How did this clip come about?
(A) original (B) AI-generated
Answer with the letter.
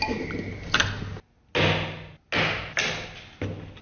A